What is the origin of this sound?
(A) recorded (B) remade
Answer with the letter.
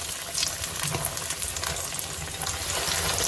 A